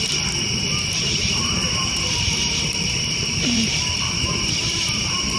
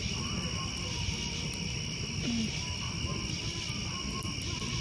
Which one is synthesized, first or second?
first